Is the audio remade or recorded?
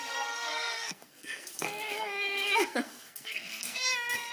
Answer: remade